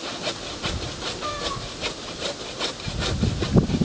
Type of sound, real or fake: real